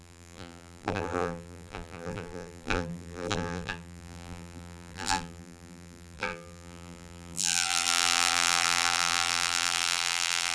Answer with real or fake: fake